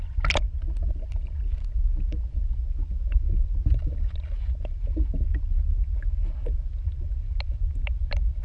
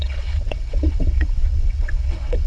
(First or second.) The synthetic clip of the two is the second